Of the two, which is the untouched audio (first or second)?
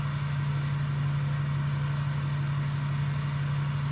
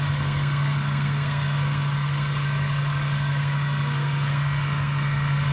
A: first